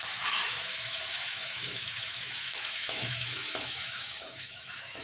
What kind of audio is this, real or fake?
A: fake